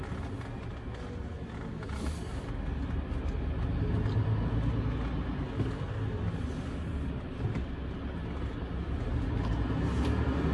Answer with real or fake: real